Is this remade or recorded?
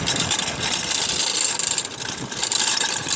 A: recorded